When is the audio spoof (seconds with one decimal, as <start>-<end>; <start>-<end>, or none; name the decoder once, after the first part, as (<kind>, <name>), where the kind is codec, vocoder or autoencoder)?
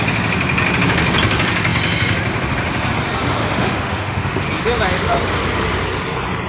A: 3.4-4.5 (autoencoder, DAC-VAE)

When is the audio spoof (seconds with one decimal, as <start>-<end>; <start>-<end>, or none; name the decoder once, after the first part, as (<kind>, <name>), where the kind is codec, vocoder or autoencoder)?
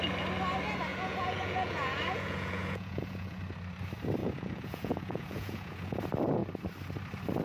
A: 0.9-3.4 (vocoder, Vocos); 4.2-6.0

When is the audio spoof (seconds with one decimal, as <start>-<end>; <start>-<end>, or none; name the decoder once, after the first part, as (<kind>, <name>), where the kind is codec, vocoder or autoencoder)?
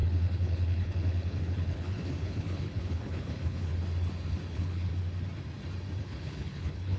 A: 0.0-3.7 (codec, HILCodec); 4.5-4.9; 6.0-7.0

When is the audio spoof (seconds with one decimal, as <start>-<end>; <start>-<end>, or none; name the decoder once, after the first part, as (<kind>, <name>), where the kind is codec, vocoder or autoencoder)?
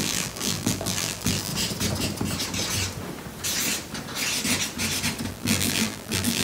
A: 0.0-1.5 (vocoder, BigVGAN v2); 5.3-6.4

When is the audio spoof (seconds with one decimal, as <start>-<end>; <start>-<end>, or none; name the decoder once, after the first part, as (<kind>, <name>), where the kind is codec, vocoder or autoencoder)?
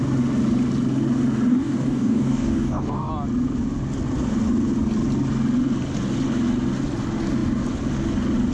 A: 1.5-3.1 (codec, DAC)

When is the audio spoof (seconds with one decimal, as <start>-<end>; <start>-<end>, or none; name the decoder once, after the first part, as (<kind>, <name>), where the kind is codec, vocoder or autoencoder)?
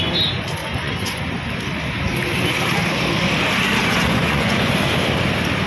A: 0.6-1.3 (vocoder, Vocos); 3.8-4.7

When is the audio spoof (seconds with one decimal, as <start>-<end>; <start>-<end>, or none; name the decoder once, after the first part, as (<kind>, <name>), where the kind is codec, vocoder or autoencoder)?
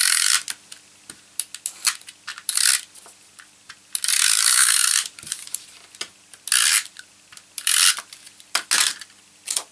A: none